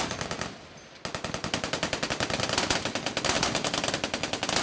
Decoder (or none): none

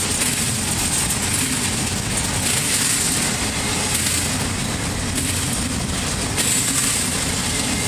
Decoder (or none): none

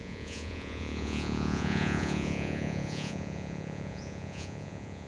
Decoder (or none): vocoder, Vocos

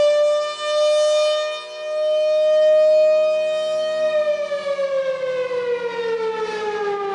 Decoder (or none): none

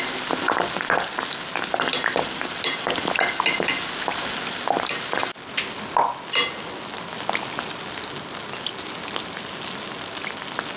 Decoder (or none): none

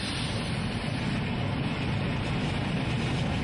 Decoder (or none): none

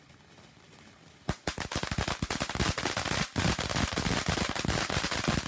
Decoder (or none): none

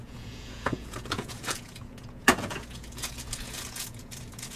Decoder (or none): vocoder, Vocos